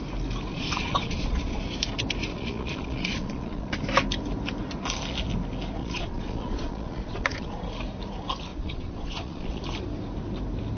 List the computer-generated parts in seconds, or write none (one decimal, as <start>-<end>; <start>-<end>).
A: 0.5-1.6; 2.3-3.8; 5.8-7.6; 8.5-9.6